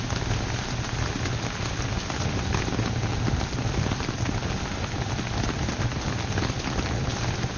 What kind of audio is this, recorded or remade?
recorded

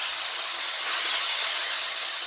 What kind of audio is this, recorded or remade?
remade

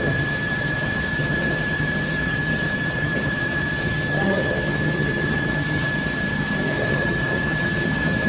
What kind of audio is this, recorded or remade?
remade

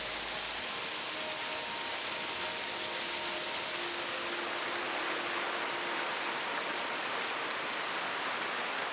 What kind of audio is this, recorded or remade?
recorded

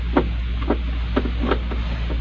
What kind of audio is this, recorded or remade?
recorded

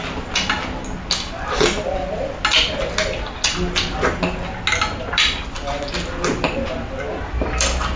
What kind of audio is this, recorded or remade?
recorded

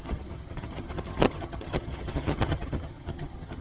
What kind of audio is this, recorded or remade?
remade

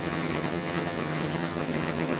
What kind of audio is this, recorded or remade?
remade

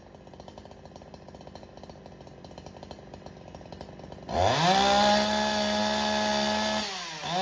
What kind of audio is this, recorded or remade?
recorded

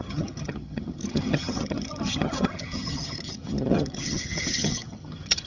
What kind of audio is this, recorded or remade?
remade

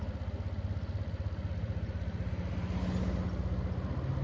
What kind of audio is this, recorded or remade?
recorded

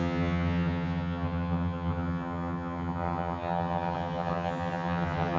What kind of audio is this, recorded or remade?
remade